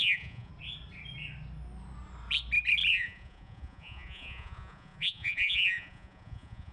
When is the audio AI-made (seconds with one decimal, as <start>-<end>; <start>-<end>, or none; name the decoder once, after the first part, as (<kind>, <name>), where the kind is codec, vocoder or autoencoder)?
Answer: 0.0-0.5 (vocoder, Vocos); 2.9-6.7